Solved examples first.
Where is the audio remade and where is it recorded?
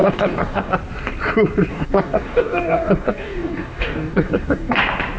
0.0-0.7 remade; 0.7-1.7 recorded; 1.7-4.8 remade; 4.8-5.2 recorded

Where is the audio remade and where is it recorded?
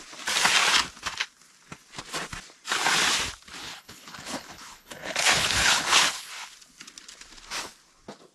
0.0-3.6 recorded; 3.6-6.3 remade; 6.3-8.3 recorded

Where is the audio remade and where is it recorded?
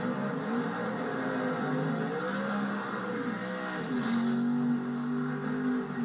0.0-6.0 recorded